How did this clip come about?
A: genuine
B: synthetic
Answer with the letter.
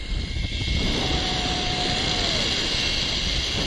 B